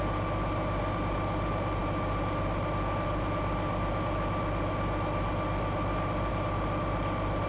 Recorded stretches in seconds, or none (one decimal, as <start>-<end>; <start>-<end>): 0.0-7.5